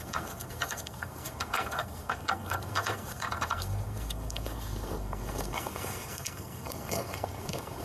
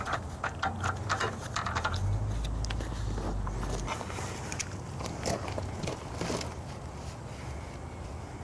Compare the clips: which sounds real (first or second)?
second